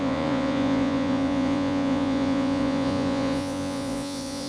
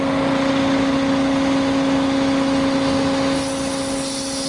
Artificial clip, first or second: first